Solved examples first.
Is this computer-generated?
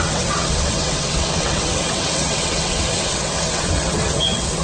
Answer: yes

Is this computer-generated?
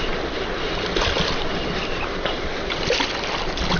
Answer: no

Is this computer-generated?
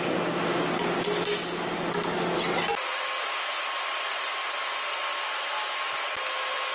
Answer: no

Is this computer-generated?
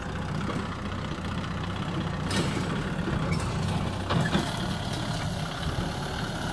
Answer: no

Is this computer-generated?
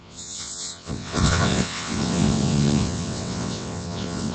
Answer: yes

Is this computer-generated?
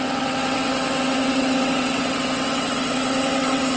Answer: yes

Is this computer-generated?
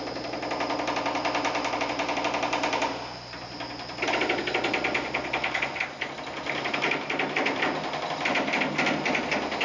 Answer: no